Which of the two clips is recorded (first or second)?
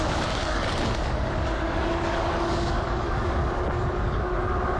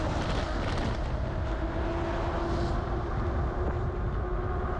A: second